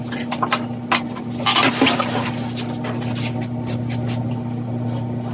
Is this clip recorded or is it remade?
recorded